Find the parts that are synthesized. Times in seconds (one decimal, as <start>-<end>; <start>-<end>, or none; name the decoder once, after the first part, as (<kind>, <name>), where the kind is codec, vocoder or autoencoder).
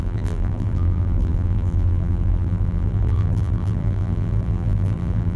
0.0-5.4 (vocoder, BigVGAN v2)